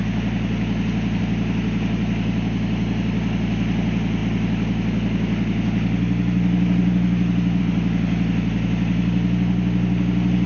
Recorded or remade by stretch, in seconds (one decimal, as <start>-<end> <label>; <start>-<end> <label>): 0.0-10.5 recorded